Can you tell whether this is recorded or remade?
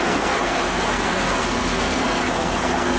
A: remade